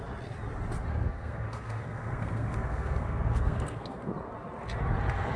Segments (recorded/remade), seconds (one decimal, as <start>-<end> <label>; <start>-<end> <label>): 0.0-0.9 recorded; 0.9-4.1 remade; 4.1-5.4 recorded